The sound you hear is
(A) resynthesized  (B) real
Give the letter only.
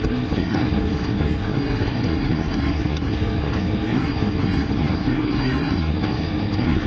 A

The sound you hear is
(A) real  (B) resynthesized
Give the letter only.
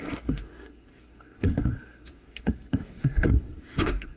B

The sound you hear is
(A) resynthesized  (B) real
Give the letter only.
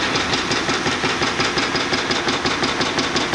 B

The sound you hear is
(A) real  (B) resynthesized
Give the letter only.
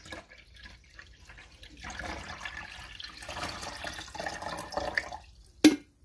A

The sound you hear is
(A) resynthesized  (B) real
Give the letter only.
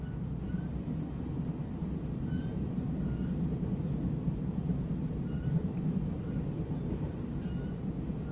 B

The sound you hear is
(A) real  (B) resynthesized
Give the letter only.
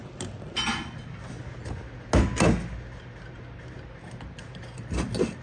A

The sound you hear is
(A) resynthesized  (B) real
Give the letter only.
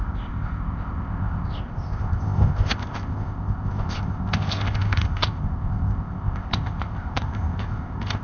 A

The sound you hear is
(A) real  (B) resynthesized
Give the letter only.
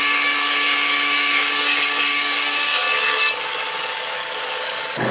B